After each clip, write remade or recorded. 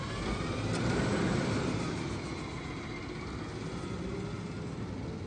recorded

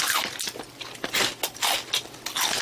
recorded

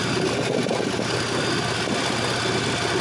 recorded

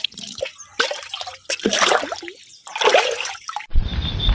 recorded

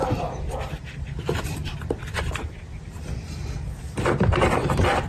remade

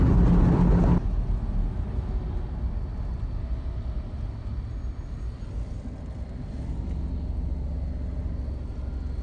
recorded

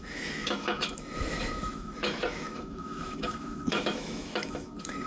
remade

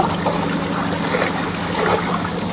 recorded